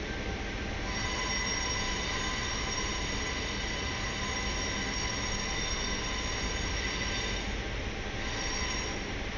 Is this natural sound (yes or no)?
yes